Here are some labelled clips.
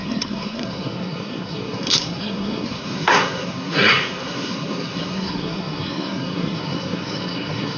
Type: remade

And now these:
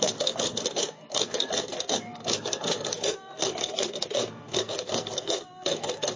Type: remade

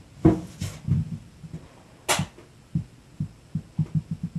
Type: recorded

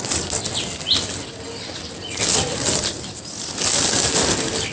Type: recorded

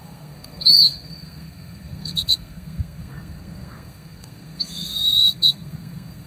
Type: remade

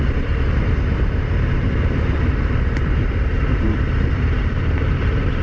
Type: remade